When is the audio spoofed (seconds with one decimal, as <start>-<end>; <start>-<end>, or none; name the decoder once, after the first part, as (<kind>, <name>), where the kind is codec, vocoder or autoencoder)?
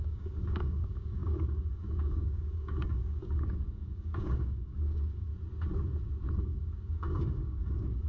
0.0-5.3 (codec, DAC); 6.4-8.1